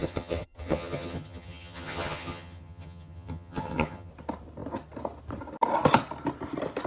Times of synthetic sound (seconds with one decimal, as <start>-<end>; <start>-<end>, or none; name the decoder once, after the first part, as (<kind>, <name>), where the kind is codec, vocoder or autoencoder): 0.0-4.1 (vocoder, HiFi-GAN)